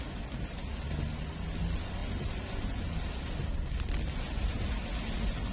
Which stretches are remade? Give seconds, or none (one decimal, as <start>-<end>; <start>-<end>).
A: none